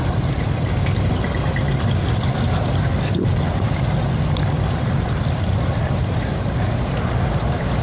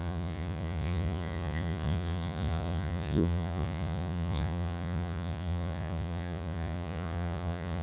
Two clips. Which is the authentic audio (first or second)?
first